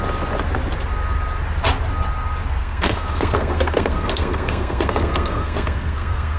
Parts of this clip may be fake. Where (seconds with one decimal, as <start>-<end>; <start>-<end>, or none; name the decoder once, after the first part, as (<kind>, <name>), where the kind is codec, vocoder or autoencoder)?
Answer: 2.6-6.4 (codec, SNAC)